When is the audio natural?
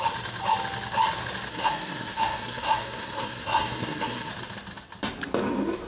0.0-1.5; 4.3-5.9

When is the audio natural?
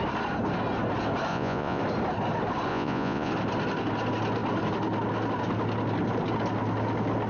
0.0-1.3; 1.8-2.7; 3.3-7.3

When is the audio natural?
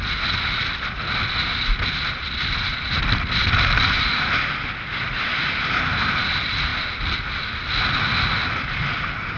0.0-9.4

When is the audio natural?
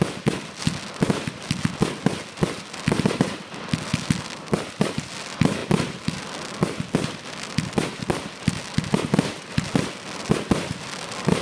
0.0-11.4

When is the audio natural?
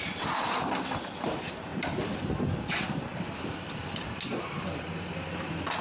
0.0-1.7; 2.4-3.1; 5.1-5.8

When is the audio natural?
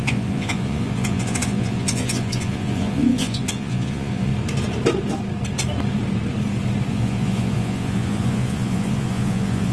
4.3-6.9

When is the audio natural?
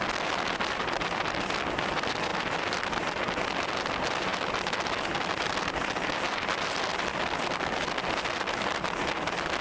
0.0-9.6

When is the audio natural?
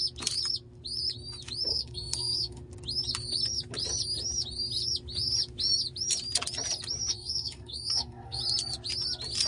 0.0-1.7; 2.6-7.1; 8.4-9.5